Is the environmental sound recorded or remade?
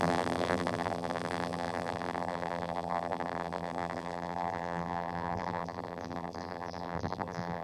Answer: remade